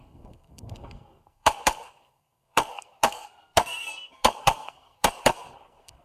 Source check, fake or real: fake